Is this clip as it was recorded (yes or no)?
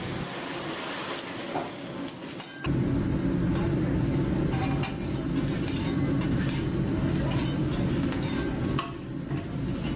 yes